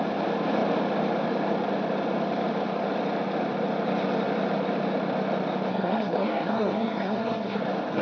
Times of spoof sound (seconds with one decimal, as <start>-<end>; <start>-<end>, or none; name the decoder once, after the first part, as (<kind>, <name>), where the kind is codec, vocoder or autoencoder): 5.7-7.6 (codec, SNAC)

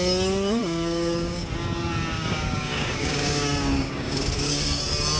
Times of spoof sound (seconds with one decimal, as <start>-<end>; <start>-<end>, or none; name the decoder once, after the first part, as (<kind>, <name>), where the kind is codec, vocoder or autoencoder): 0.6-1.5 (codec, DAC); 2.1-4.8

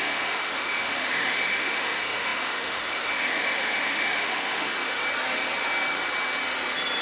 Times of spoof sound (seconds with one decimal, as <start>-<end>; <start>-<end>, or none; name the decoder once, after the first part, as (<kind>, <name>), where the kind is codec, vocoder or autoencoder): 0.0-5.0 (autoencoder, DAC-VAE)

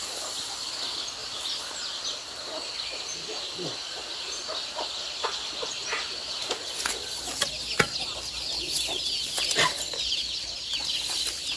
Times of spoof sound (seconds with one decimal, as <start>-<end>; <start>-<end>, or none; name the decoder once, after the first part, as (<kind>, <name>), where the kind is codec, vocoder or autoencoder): none

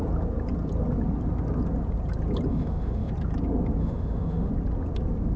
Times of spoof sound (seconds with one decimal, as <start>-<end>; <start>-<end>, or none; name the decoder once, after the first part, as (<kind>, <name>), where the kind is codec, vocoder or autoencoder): 2.5-3.1 (autoencoder, DAC-VAE); 3.8-4.5

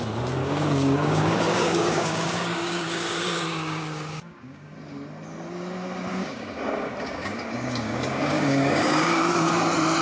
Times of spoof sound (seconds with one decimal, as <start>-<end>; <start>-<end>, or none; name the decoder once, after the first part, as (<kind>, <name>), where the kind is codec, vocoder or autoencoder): 0.4-4.7 (codec, DAC); 6.1-9.5